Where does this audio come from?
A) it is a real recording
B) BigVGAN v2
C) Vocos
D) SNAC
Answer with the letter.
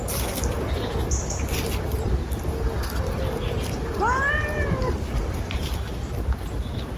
A